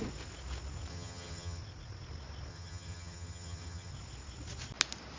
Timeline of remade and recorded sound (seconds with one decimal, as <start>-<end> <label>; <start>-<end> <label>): 0.0-0.9 recorded; 0.9-1.6 remade; 1.6-2.5 recorded; 2.5-3.9 remade; 3.9-5.2 recorded